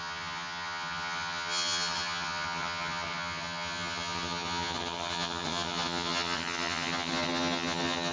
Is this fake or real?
fake